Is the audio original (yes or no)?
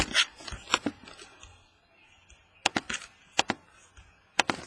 yes